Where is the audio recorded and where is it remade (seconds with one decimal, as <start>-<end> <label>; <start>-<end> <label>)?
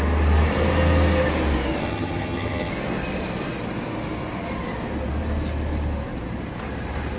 0.0-1.8 recorded; 1.8-2.7 remade; 2.7-7.2 recorded